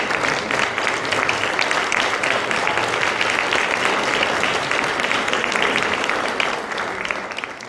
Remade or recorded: remade